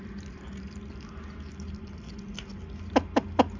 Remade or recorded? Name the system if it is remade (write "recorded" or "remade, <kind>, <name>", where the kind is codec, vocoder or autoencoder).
recorded